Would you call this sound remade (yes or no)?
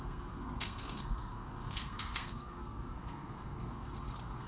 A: yes